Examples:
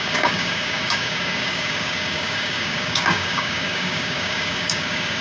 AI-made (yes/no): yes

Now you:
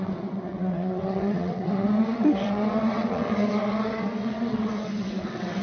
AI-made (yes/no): yes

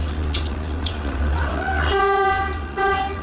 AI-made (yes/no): yes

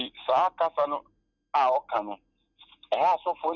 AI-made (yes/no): no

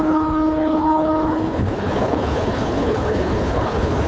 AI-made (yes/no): yes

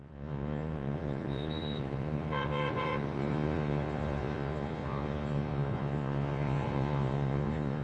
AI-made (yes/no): yes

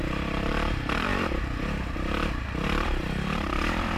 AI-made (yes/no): yes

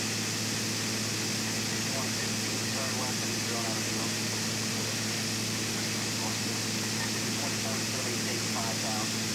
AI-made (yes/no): no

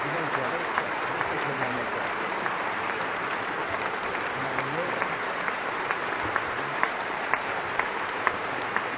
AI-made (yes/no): yes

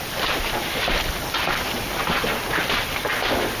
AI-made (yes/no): no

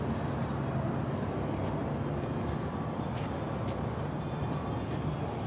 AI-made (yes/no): no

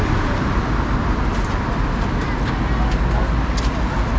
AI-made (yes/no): no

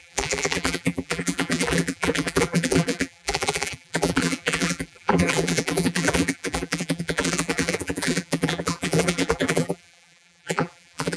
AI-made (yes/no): yes